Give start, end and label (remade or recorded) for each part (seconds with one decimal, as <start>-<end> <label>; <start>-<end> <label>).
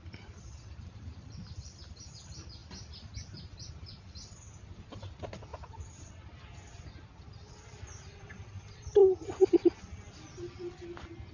0.0-11.3 recorded